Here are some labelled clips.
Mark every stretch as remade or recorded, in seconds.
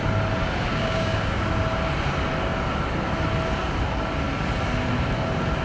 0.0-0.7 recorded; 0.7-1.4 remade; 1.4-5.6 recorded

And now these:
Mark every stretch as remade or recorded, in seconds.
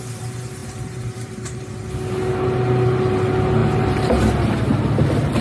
0.0-0.6 recorded; 0.6-1.6 remade; 1.6-3.6 recorded; 3.6-4.2 remade; 4.2-5.4 recorded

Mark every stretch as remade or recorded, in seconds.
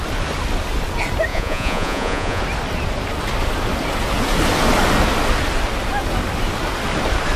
0.0-1.3 recorded; 1.3-2.4 remade; 2.4-7.4 recorded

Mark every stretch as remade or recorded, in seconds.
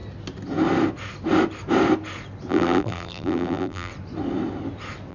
0.0-2.5 recorded; 2.5-3.9 remade; 3.9-5.1 recorded